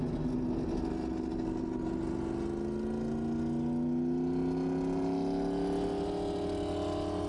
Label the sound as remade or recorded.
recorded